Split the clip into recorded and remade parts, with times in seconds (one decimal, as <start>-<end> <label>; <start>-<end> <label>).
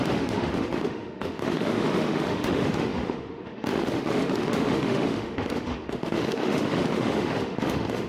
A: 0.0-8.1 remade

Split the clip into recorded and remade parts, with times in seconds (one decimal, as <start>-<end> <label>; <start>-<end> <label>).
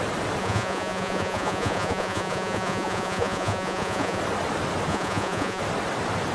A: 0.0-0.4 recorded; 0.4-4.2 remade; 4.2-4.9 recorded; 4.9-5.6 remade; 5.6-6.3 recorded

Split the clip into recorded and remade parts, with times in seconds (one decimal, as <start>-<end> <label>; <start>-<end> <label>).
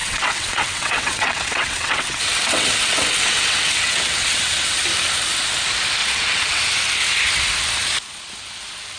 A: 0.0-4.8 remade; 4.8-6.0 recorded; 6.0-6.6 remade; 6.6-9.0 recorded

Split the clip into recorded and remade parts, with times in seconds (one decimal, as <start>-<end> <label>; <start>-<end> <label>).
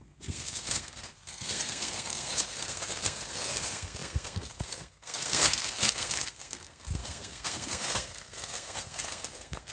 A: 0.0-9.7 remade